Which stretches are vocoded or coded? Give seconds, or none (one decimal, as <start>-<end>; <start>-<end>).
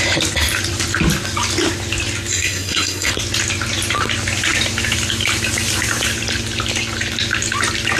2.3-3.1